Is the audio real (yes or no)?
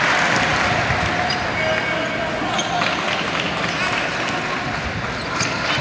yes